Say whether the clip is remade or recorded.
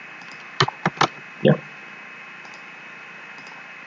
recorded